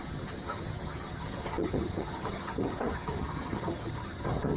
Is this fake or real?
fake